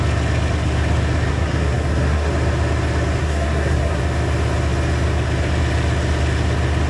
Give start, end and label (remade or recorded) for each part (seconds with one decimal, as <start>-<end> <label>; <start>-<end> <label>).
0.0-1.3 recorded; 1.3-2.3 remade; 2.3-3.2 recorded; 3.2-4.0 remade; 4.0-6.9 recorded